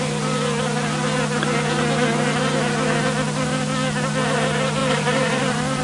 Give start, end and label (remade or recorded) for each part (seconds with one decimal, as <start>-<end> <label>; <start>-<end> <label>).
0.0-4.8 recorded; 4.8-5.8 remade